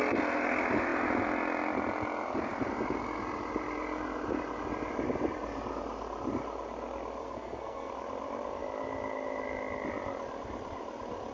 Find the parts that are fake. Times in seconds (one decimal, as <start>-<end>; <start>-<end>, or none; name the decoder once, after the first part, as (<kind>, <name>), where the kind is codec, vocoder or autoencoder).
7.2-7.9 (codec, SNAC)